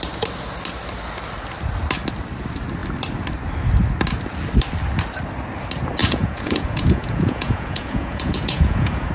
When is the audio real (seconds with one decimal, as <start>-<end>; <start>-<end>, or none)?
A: 0.0-6.0